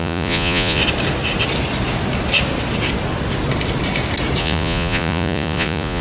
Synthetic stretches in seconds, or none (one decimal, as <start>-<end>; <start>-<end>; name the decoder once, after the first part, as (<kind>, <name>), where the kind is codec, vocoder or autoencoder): 0.0-0.8 (vocoder, Vocos); 4.4-6.0